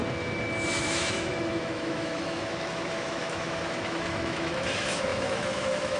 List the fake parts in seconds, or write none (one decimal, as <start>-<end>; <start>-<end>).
0.8-6.0